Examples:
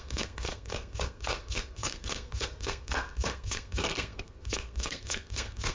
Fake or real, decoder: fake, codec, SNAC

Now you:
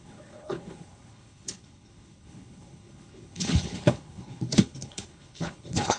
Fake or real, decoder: fake, codec, HILCodec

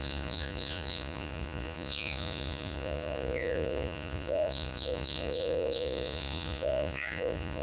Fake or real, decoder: fake, vocoder, Vocos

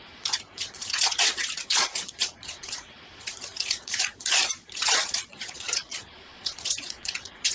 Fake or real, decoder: fake, vocoder, Vocos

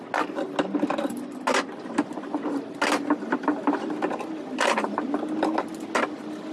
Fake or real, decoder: real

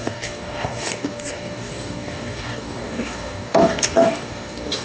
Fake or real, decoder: fake, codec, DAC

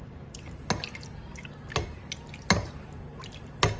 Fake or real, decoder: real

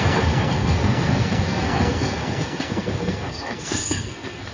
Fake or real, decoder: fake, codec, SNAC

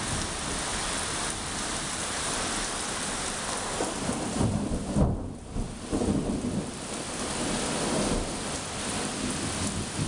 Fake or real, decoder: fake, vocoder, BigVGAN v2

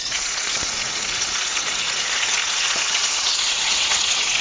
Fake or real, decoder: fake, vocoder, Vocos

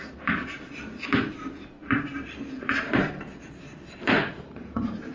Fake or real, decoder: fake, vocoder, BigVGAN v2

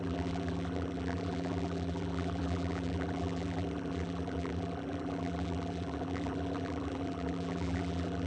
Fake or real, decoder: fake, vocoder, BigVGAN v2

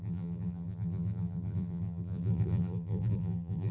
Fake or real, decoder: fake, vocoder, BigVGAN v2